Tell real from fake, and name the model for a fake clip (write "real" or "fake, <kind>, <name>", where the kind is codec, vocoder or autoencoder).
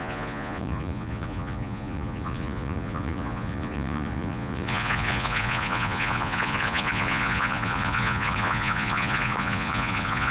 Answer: fake, vocoder, Vocos